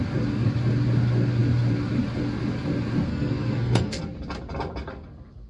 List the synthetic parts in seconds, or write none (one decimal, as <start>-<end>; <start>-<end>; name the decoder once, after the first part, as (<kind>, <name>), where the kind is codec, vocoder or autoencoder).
3.1-4.0 (codec, SNAC)